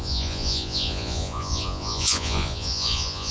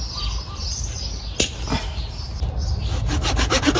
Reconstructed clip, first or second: first